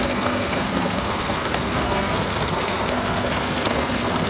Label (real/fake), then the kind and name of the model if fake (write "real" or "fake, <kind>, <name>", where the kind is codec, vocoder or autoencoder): fake, codec, SNAC